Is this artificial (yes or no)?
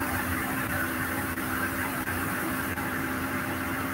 yes